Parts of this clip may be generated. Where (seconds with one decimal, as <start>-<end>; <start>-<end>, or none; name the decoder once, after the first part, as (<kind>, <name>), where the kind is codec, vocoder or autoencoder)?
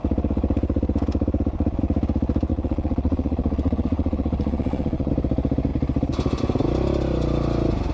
2.5-5.1 (vocoder, Vocos)